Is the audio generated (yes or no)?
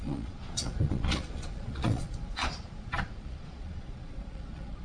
yes